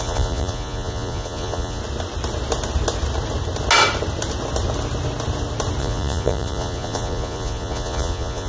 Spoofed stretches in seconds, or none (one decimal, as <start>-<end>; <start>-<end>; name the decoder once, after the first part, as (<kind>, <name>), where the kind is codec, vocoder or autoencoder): 0.0-1.8 (vocoder, Vocos); 5.8-8.5